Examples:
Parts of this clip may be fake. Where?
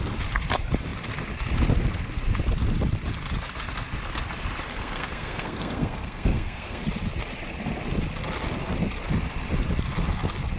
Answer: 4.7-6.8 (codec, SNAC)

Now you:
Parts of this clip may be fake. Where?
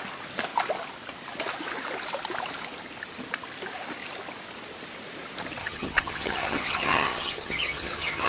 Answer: 5.6-8.3 (vocoder, HiFi-GAN)